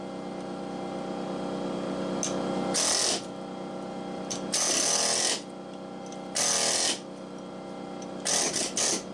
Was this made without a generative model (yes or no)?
yes